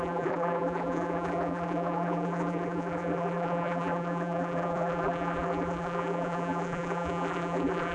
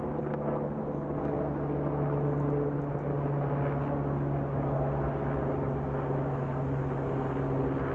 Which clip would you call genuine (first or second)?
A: second